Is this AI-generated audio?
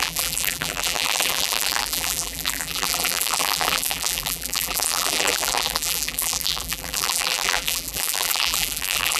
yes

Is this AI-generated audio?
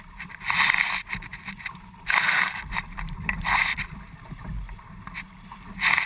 yes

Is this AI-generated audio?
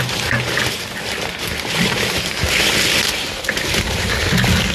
no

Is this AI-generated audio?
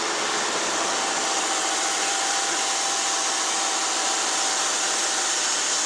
yes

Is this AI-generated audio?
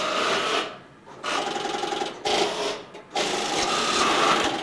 no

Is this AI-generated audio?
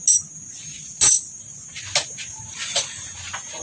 no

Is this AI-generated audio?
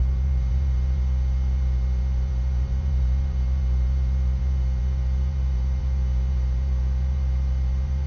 yes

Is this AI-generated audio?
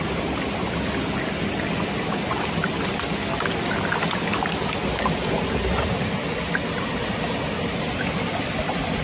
no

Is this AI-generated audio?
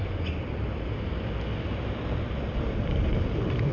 yes